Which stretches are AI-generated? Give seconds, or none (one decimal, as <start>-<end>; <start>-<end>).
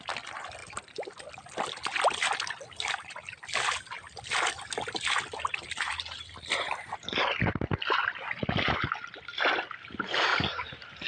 10.3-11.1